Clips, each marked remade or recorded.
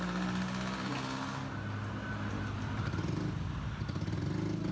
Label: recorded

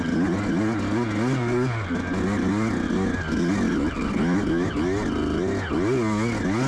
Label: recorded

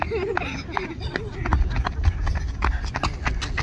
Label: recorded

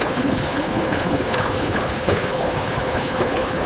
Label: remade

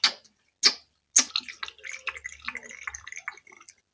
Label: recorded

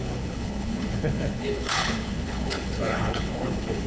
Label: remade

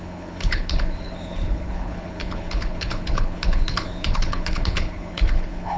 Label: remade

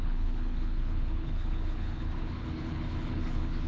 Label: remade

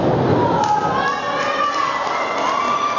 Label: recorded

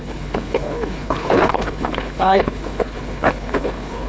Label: remade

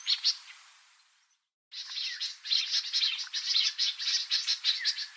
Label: recorded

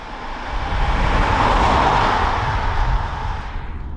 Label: recorded